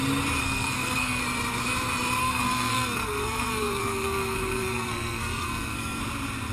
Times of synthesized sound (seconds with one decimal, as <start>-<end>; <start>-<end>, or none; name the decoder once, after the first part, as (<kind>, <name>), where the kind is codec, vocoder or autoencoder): 0.4-1.2 (codec, SNAC); 2.2-6.0